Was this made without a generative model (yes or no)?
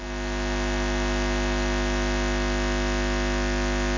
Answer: yes